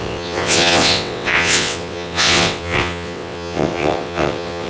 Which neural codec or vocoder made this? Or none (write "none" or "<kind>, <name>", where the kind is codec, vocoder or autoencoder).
vocoder, WaveNeXt